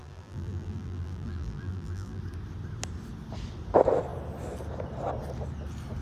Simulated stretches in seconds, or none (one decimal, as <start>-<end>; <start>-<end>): 0.0-2.2